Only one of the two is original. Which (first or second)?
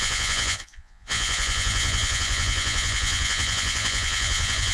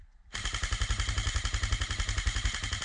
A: second